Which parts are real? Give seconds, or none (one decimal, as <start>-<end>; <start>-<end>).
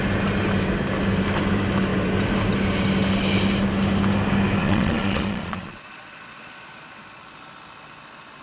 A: 0.0-4.6; 7.2-8.4